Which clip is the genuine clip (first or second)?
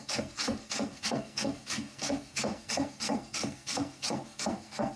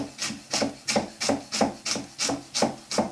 second